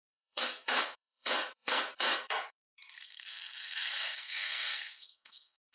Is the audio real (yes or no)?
no